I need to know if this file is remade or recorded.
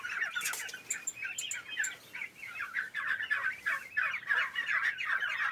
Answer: recorded